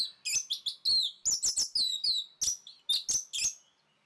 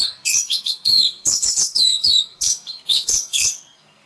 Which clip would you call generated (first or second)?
second